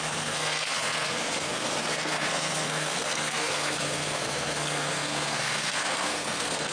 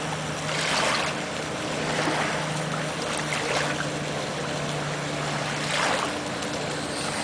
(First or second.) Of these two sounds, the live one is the second